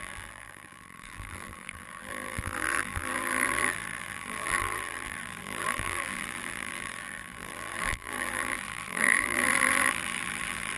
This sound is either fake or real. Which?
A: fake